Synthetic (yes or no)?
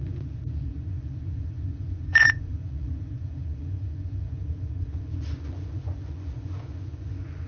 yes